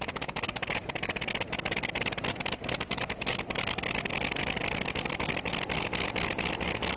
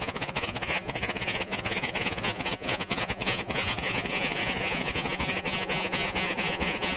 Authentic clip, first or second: first